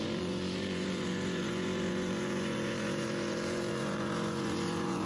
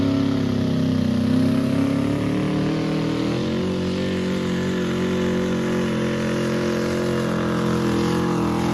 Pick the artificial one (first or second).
first